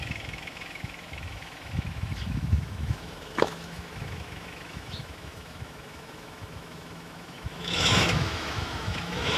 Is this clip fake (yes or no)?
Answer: yes